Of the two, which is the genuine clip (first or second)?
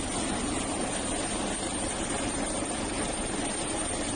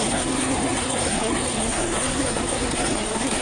first